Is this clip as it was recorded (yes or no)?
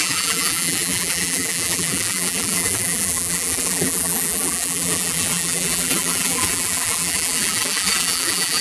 no